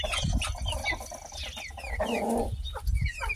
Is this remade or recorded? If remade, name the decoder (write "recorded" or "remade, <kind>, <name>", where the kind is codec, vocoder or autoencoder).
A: recorded